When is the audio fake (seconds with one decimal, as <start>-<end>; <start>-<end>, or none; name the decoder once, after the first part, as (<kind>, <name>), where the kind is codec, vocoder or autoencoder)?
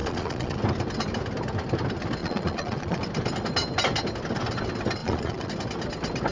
0.0-0.6 (vocoder, Vocos); 2.2-3.0; 5.0-5.5